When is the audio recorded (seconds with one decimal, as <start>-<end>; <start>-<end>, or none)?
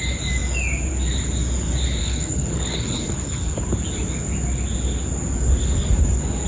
0.0-2.0; 3.6-6.5